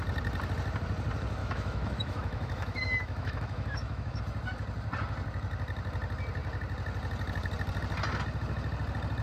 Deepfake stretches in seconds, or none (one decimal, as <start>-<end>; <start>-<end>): 1.4-4.2